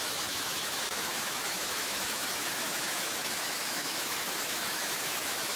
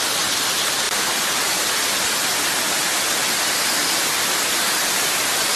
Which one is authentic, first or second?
second